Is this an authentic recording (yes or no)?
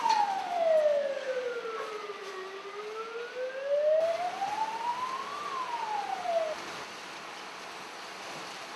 yes